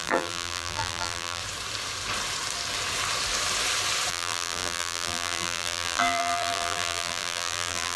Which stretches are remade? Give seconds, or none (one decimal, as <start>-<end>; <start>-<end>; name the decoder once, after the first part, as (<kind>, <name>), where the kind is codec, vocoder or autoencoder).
0.0-1.4 (vocoder, BigVGAN v2); 4.1-8.0